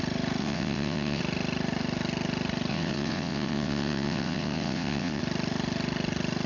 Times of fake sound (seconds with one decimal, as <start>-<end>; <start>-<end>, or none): 0.4-1.2; 2.7-5.2